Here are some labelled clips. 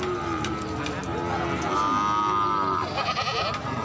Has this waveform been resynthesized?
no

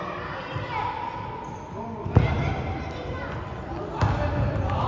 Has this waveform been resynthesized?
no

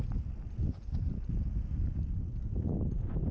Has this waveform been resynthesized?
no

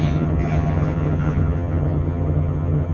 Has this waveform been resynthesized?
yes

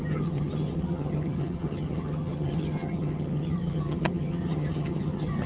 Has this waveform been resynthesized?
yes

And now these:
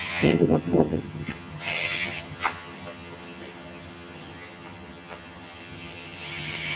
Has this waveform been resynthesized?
yes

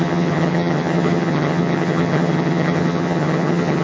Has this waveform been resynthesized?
yes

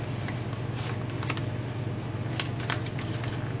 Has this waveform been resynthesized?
no